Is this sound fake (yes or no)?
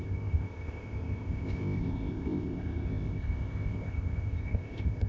yes